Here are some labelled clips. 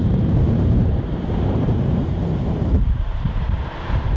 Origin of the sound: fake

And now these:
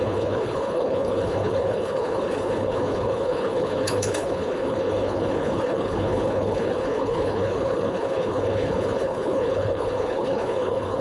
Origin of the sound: fake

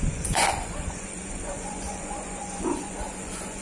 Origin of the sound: fake